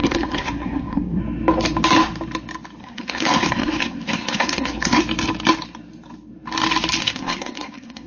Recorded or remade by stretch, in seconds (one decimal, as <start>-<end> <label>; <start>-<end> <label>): 0.0-1.2 remade; 1.2-2.8 recorded; 2.8-5.0 remade; 5.0-7.0 recorded; 7.0-8.1 remade